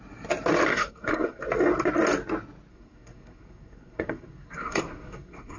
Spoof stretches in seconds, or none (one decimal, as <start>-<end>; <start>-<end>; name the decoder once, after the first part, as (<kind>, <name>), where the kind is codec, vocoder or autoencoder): 0.7-1.4 (codec, SNAC); 2.7-5.6